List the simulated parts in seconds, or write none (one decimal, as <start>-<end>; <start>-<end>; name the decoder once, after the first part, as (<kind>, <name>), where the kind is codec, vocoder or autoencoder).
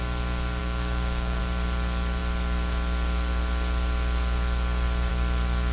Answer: 0.6-1.4 (codec, DAC)